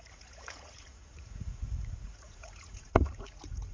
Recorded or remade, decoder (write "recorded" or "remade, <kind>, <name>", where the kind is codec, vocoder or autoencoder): remade, vocoder, Vocos